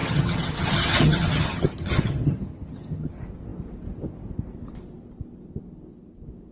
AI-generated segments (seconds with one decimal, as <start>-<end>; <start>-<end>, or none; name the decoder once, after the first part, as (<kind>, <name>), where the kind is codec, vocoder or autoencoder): 0.0-3.1 (vocoder, HiFi-GAN)